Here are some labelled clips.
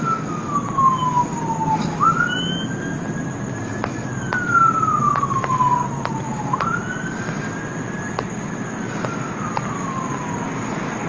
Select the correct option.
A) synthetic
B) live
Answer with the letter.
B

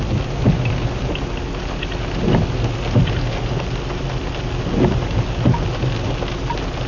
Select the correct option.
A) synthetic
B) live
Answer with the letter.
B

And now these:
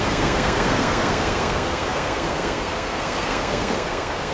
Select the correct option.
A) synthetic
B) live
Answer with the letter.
A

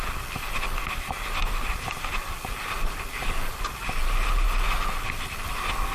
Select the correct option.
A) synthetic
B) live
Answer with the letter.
B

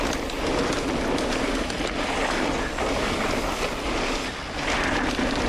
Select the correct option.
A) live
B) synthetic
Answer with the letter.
A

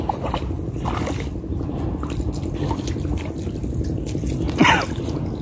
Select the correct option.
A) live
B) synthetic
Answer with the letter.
A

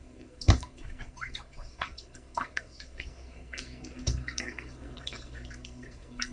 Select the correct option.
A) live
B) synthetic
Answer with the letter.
B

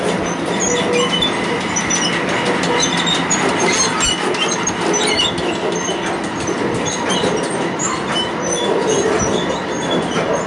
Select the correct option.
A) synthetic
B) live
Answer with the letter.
B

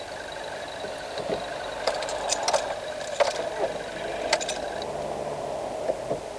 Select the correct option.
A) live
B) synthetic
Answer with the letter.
A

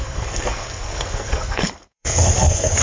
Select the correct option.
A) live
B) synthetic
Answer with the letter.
B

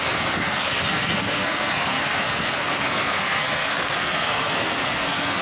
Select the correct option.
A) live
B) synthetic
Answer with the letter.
B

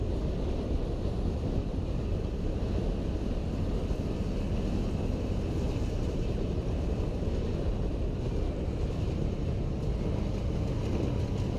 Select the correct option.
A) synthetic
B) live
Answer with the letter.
B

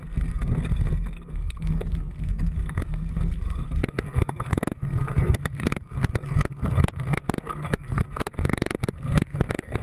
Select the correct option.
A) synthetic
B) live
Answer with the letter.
A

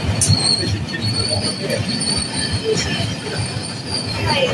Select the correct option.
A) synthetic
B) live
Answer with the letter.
B